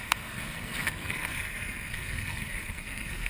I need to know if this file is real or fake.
fake